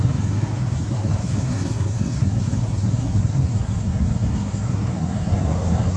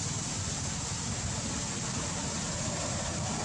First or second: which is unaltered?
second